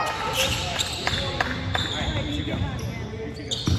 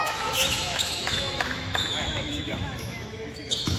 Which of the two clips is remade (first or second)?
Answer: second